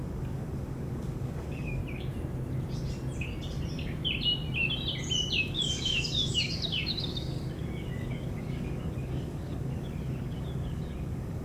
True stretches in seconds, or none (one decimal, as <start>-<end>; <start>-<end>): 1.8-5.4